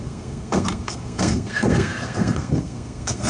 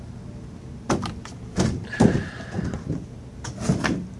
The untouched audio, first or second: second